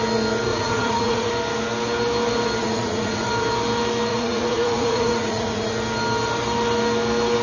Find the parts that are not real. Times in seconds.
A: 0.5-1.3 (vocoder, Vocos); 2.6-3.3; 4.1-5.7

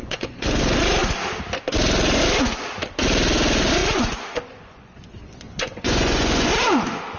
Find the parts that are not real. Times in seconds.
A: 0.0-0.6 (vocoder, Vocos); 3.8-6.5

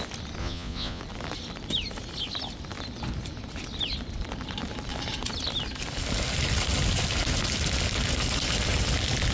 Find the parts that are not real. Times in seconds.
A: 0.4-1.0 (vocoder, Vocos)

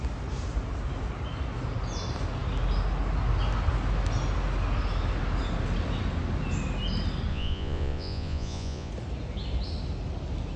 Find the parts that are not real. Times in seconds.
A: 7.3-8.9 (vocoder, Vocos)

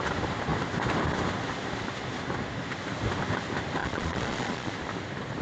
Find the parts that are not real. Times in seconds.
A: 3.8-4.7 (vocoder, Vocos)

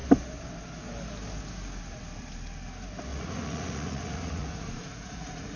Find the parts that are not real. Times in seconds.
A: 3.1-5.6 (vocoder, Vocos)

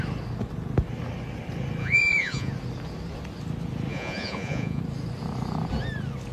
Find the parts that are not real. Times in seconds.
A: 1.8-2.5 (vocoder, Vocos); 3.9-4.8